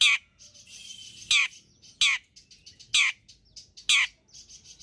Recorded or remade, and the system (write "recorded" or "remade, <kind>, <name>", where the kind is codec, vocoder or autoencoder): recorded